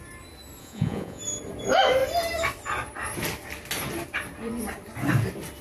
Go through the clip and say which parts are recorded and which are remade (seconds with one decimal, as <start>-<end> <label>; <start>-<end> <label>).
0.0-0.6 recorded; 0.6-1.2 remade; 1.2-5.6 recorded